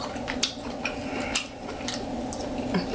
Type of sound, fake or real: real